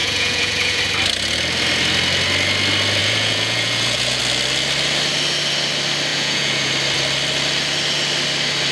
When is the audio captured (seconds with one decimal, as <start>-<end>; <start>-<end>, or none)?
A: 0.8-3.0; 4.2-6.1; 6.7-8.7